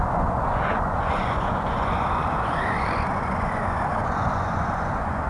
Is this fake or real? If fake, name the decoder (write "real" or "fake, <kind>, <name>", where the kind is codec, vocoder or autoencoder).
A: fake, vocoder, Vocos